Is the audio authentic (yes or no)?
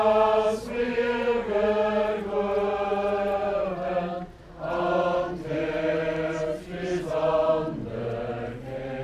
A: yes